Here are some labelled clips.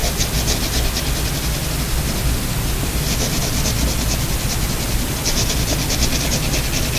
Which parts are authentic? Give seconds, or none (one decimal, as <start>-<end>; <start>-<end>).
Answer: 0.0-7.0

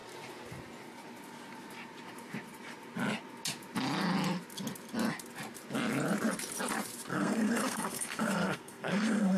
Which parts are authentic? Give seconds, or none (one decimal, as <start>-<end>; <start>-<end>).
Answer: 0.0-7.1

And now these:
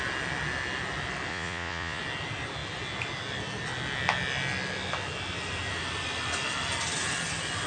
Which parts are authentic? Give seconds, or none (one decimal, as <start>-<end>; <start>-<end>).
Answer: 0.0-1.3; 2.0-7.7

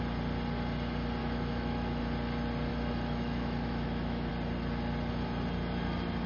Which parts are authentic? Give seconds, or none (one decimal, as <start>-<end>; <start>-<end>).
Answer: 0.0-1.2; 2.0-2.7; 4.3-6.3

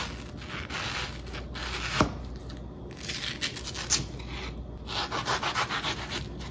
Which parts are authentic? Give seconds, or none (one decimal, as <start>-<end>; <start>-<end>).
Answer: 0.0-6.5

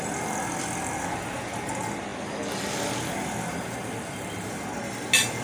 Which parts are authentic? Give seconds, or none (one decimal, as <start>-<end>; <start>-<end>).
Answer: 0.0-5.4

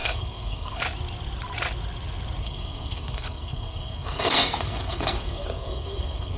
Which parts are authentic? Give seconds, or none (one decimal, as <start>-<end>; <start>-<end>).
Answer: 0.8-2.4